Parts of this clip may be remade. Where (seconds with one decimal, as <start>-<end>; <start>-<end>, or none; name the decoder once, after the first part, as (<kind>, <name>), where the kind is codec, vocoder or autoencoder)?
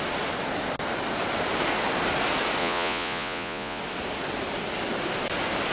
2.6-3.8 (vocoder, Vocos)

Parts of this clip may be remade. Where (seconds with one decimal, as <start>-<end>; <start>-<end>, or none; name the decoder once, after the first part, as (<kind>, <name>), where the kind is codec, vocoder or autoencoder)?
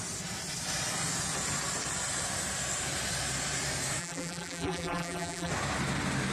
4.0-5.5 (vocoder, BigVGAN v2)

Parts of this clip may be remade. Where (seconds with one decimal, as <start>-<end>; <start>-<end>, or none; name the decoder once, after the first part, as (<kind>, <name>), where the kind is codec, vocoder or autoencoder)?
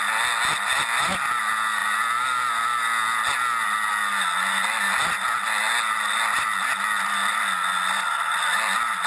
none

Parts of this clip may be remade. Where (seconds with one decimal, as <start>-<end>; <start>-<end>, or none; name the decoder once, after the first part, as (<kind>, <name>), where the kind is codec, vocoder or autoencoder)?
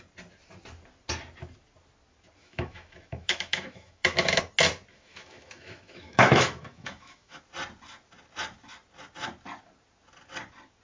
2.4-4.4 (autoencoder, DAC-VAE); 4.9-7.4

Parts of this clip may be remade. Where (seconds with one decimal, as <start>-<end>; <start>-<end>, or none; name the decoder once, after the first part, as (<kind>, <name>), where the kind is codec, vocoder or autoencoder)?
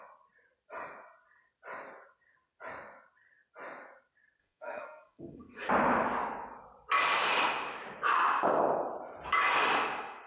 4.4-5.7 (codec, SNAC)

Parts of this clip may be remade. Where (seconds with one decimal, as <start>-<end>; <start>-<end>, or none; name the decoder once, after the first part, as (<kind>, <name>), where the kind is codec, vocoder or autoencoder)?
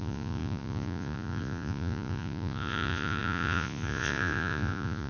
0.0-5.1 (vocoder, Vocos)